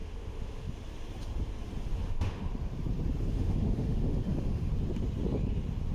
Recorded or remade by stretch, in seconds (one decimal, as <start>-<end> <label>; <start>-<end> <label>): 0.0-0.7 remade; 0.7-1.9 recorded; 1.9-2.5 remade; 2.5-3.2 recorded; 3.2-4.7 remade; 4.7-5.9 recorded